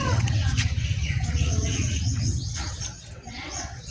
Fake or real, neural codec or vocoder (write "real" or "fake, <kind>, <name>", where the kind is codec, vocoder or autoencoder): fake, vocoder, WaveNeXt